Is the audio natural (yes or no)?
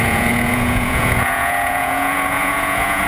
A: no